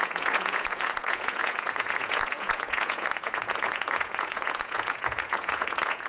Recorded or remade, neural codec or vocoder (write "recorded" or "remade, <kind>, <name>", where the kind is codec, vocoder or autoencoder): remade, vocoder, Vocos